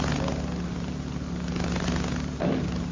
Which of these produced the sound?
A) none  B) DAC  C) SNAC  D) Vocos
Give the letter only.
A